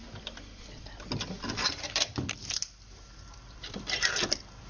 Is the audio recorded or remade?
remade